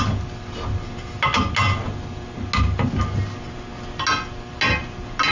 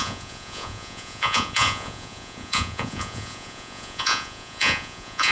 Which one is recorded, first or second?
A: first